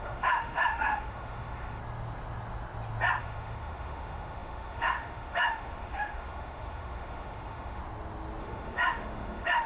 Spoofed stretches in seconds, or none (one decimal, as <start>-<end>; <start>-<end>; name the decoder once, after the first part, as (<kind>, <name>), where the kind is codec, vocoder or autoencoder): 0.0-1.8 (autoencoder, DAC-VAE); 3.2-7.8; 8.4-9.7